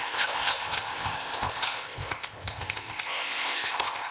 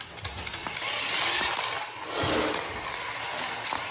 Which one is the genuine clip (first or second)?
second